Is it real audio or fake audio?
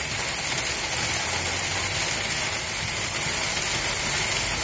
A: real